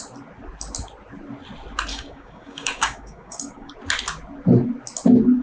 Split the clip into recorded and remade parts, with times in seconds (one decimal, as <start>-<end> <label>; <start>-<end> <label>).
0.0-1.9 recorded; 1.9-3.7 remade; 3.7-5.4 recorded